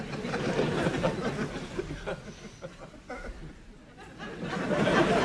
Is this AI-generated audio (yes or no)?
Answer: no